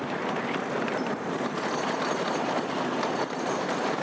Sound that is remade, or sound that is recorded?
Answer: remade